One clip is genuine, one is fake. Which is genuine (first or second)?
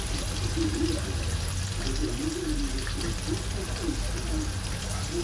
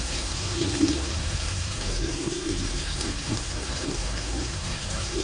first